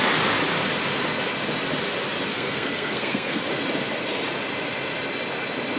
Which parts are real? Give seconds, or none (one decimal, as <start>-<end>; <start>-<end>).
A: 0.0-2.3; 3.4-5.8